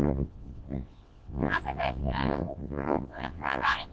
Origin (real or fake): fake